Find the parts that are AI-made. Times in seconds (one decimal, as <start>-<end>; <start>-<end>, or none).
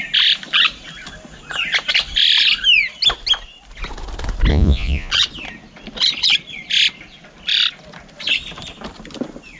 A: 4.5-5.1